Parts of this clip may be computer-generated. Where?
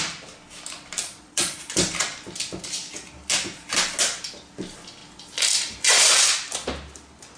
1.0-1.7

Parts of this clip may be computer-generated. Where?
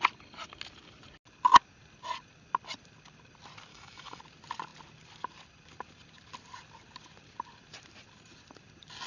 3.7-4.2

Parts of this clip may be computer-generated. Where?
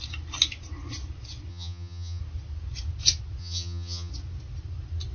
1.5-2.2; 3.4-4.1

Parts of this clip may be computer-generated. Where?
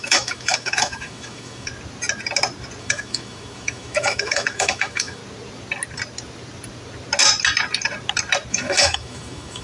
0.0-1.7; 2.8-5.2; 8.5-9.6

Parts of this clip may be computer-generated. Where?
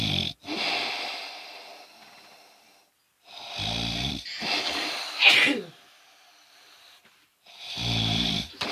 0.0-1.7; 5.7-8.7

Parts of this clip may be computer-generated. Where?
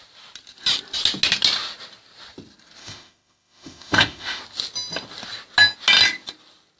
2.8-4.4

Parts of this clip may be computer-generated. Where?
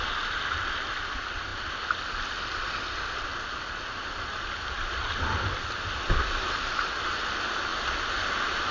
none